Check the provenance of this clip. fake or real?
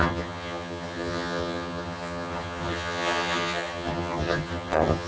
fake